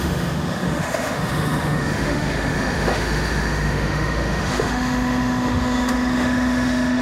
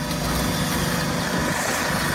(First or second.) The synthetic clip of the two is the first